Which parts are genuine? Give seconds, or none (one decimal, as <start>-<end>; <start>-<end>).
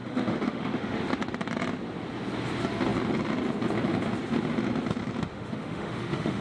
1.1-5.3